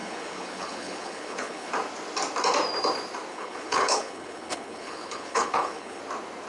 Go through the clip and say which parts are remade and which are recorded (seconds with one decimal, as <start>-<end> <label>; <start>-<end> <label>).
0.0-1.7 remade; 1.7-3.3 recorded; 3.3-6.0 remade; 6.0-6.5 recorded